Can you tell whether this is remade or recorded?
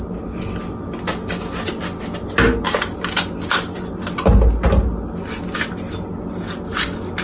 recorded